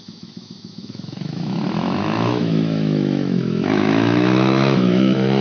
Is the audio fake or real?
fake